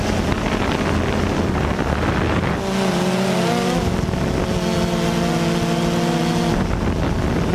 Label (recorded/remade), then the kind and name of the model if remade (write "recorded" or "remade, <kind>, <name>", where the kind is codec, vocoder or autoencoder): recorded